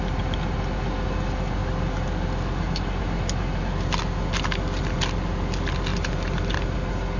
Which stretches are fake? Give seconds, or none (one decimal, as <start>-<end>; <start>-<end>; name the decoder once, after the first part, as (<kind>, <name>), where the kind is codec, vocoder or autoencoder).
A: none